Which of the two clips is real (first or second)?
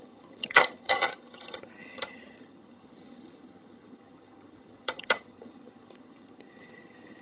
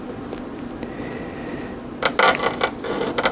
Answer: second